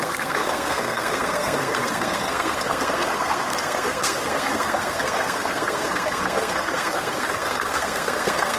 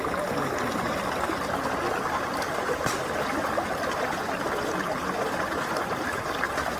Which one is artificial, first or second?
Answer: first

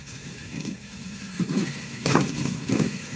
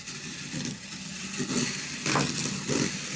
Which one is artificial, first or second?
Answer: first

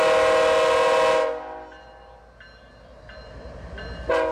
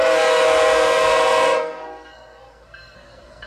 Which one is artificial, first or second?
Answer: second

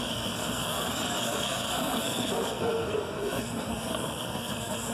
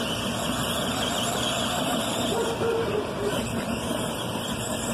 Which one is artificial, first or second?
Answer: first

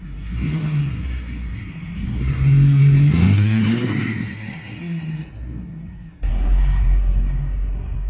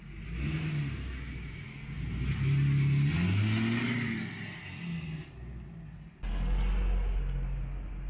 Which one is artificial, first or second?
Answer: first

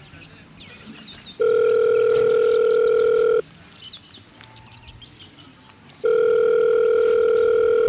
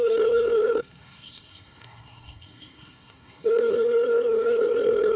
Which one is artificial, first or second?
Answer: second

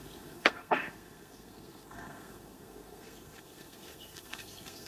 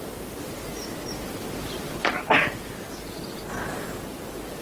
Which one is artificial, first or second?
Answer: first